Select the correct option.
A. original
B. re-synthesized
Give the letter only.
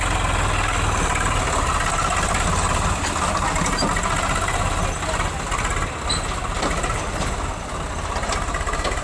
A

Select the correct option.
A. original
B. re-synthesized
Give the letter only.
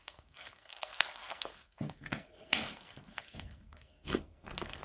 B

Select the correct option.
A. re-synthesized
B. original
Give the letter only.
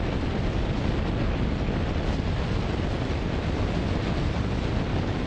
B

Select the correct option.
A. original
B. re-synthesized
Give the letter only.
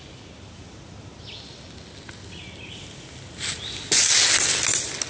A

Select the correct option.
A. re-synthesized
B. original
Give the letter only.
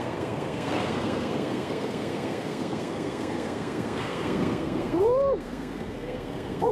A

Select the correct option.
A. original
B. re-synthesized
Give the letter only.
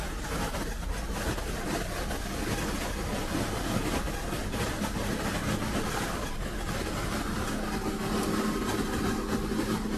A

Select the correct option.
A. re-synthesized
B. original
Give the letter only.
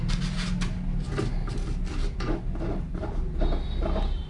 B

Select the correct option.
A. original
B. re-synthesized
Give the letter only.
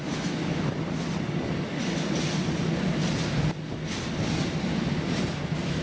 A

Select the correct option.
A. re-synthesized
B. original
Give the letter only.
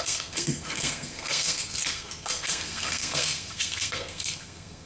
A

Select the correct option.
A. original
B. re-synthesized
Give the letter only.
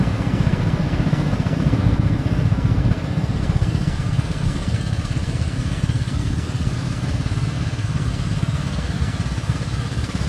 B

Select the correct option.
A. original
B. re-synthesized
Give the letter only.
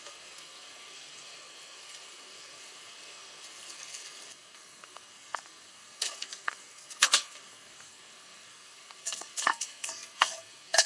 B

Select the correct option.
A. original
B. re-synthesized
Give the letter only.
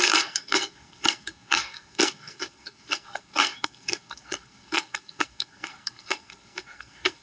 B